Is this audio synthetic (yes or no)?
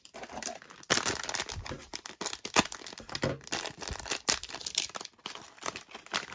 no